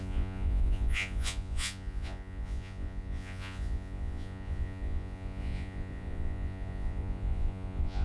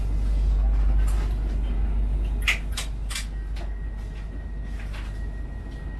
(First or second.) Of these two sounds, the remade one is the first